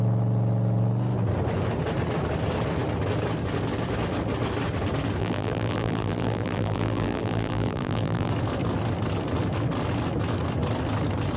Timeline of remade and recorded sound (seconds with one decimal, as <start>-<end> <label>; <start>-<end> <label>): 0.0-5.2 recorded; 5.2-8.3 remade; 8.3-11.4 recorded